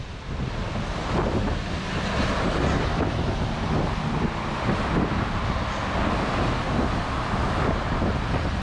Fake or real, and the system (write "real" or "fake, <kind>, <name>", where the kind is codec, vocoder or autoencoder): real